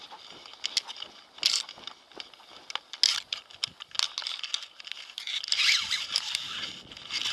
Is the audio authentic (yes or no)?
yes